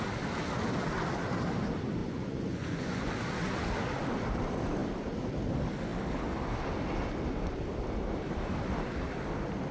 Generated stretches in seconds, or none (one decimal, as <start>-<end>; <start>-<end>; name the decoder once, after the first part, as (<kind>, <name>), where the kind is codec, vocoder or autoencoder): 2.0-3.1 (vocoder, Vocos)